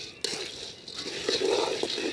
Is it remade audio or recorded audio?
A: recorded